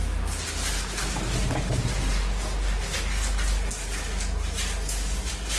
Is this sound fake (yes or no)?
no